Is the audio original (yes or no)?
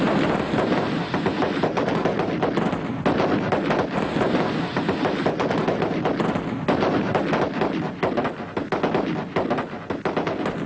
yes